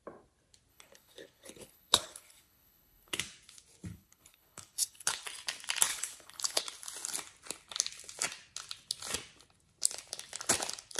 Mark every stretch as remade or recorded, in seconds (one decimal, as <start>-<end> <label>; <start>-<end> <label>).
0.0-0.7 recorded; 0.7-3.2 remade; 3.2-3.9 recorded; 3.9-5.2 remade; 5.2-5.9 recorded; 5.9-6.6 remade; 6.6-11.0 recorded